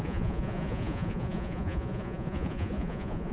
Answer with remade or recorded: remade